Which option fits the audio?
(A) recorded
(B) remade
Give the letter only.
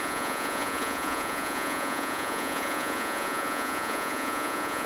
B